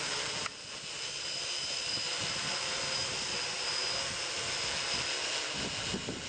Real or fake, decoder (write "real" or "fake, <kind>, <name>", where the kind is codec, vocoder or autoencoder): real